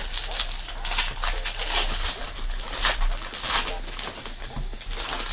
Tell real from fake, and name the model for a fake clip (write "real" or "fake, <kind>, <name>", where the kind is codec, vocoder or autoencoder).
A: real